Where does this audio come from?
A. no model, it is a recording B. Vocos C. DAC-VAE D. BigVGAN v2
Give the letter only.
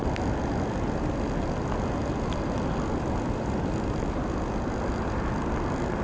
A